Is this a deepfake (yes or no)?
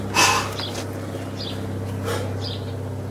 no